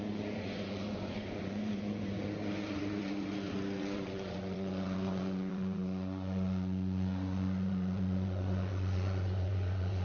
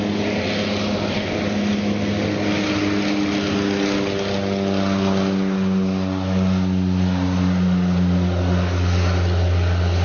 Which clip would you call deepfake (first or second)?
first